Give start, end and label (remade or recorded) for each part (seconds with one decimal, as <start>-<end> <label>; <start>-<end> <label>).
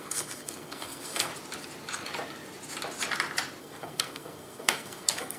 0.0-1.3 remade; 1.3-3.6 recorded; 3.6-5.4 remade